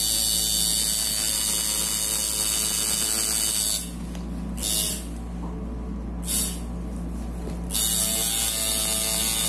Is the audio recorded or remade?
recorded